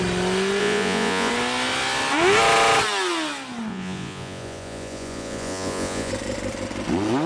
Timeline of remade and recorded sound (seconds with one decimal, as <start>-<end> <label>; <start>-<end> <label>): 0.0-0.6 recorded; 0.6-1.3 remade; 1.3-3.7 recorded; 3.7-6.1 remade; 6.1-7.3 recorded